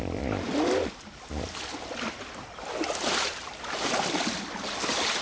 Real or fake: real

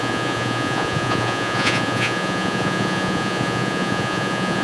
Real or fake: fake